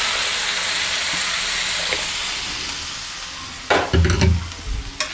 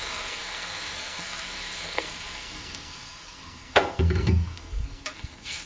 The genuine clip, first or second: first